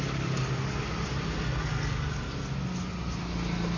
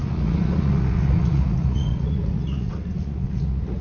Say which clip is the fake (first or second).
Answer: second